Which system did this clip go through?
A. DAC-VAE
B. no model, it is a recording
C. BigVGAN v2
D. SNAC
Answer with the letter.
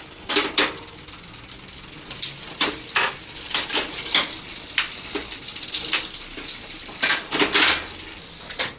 B